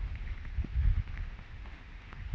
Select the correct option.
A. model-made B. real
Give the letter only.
A